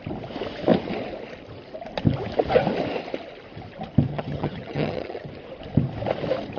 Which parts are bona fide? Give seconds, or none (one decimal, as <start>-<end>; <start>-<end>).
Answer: 0.0-4.1; 5.3-6.6